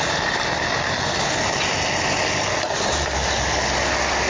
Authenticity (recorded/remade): recorded